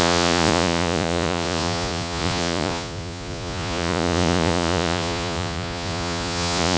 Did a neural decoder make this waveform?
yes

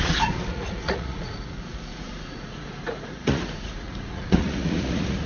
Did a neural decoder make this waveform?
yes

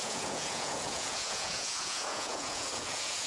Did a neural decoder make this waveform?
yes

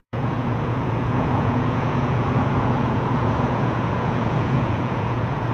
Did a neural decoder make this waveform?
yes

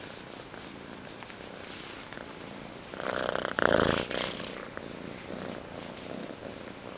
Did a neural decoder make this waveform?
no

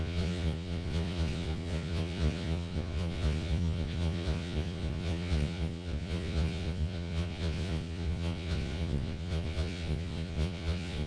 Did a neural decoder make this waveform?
yes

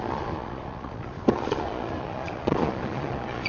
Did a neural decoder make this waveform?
yes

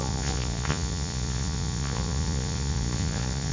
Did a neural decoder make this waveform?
yes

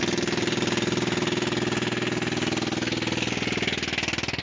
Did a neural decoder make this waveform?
no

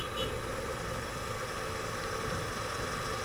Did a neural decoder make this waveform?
no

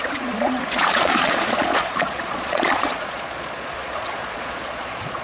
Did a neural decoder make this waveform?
yes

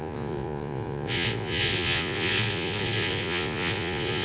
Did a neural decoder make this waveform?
yes